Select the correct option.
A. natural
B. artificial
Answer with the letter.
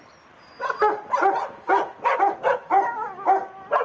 A